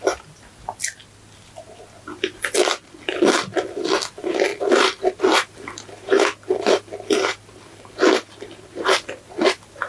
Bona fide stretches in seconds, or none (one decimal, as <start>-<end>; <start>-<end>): 1.0-2.6; 4.5-5.2